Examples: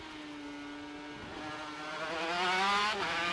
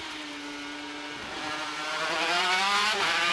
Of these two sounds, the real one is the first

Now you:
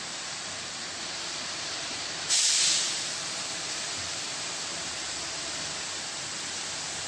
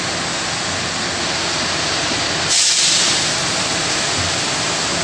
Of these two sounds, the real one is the second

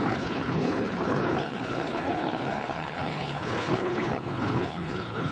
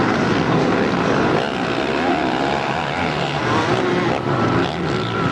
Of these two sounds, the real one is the second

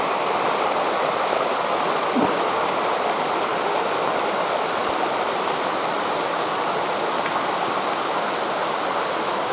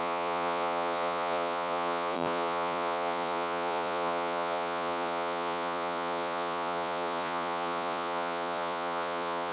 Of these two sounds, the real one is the first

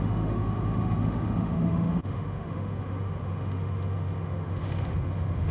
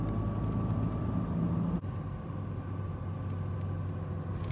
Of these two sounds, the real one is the second